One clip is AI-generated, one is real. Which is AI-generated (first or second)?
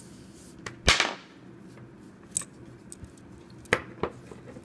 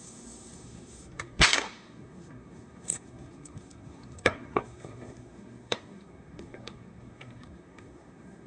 second